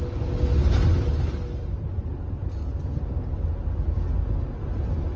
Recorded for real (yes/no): yes